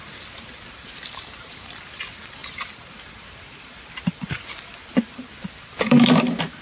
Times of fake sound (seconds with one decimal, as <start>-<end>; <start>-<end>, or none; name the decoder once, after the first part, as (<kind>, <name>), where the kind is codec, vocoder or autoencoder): 0.0-6.6 (vocoder, BigVGAN v2)